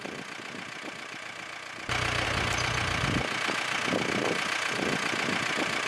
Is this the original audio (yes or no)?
yes